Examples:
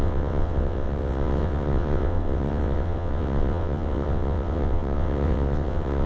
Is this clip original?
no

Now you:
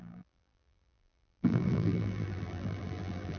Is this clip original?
no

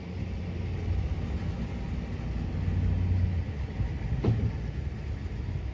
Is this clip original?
yes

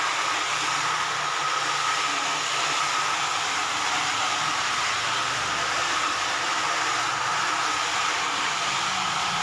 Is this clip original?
yes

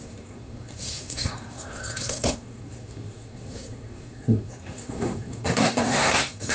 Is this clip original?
no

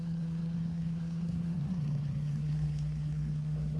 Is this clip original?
no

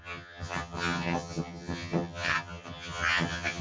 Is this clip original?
no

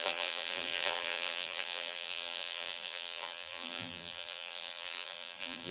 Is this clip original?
no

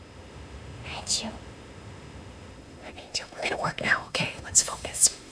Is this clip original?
no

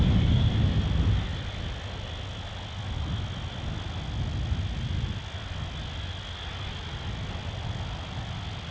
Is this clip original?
yes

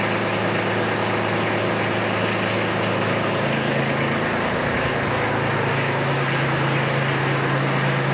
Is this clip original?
yes